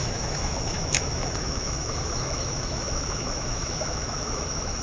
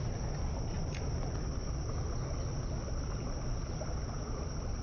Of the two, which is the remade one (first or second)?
first